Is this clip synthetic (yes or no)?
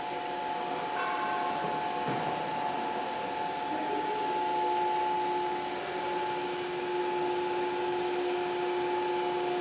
no